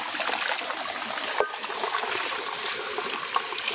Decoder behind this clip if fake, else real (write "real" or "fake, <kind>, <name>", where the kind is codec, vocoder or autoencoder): fake, vocoder, BigVGAN v2